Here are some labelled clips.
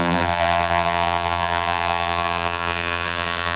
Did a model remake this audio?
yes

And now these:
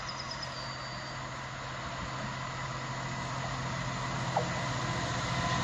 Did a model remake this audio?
no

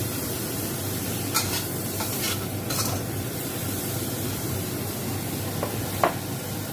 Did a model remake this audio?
yes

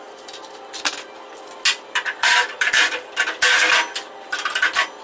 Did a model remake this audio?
no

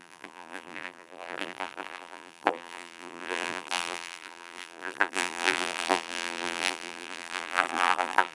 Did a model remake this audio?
yes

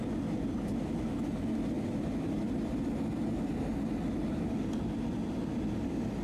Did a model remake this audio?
no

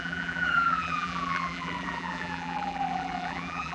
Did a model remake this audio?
yes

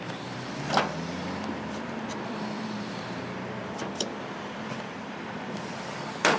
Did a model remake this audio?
yes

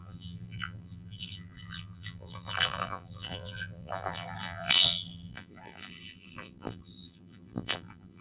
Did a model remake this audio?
yes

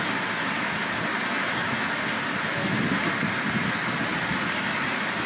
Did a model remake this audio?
no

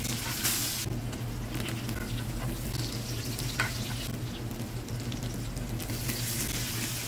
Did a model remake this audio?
no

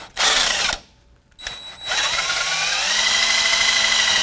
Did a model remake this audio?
no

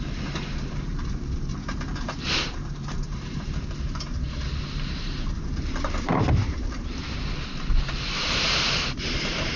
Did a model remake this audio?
yes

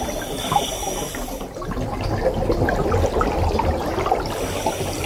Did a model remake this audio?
no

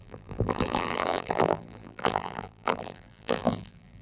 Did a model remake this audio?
yes